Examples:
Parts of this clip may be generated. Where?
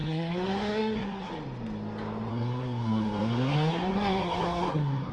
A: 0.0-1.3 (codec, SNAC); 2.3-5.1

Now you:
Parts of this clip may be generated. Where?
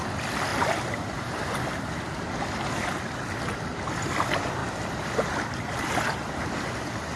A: none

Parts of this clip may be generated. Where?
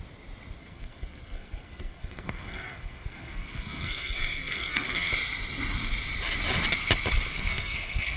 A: 0.6-5.1 (codec, SNAC); 7.3-8.2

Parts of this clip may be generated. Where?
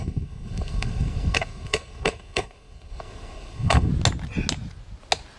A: 0.0-3.9 (codec, SNAC)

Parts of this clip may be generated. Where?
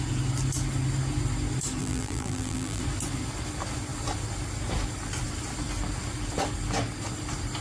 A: 1.8-2.8 (vocoder, BigVGAN v2)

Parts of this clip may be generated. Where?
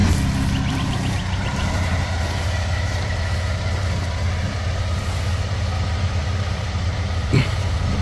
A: 0.7-8.0 (vocoder, BigVGAN v2)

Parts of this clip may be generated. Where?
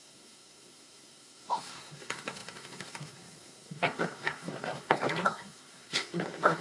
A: 0.0-6.6 (codec, SNAC)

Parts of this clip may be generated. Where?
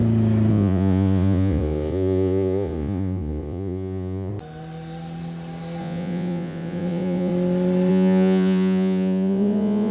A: 0.5-4.3 (vocoder, Vocos); 5.8-7.3; 7.9-9.9